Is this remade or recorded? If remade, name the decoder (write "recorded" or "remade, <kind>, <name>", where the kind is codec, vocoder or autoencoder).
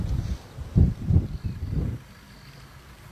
recorded